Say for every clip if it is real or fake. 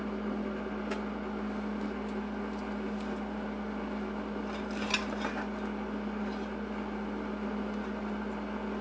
real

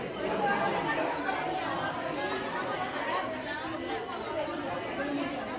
real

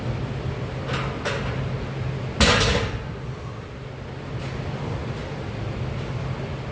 real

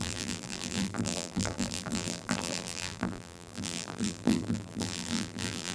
fake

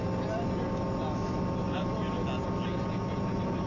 real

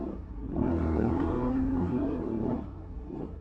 fake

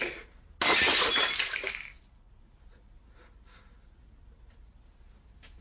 real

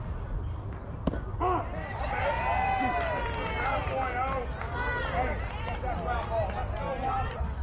real